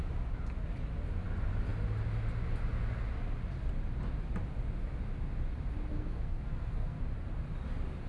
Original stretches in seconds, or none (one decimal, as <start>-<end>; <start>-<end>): 0.0-5.9; 7.0-8.1